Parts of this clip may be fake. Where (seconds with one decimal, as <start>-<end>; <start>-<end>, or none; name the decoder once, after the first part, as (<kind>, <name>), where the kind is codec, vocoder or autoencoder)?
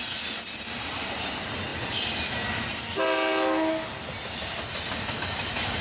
none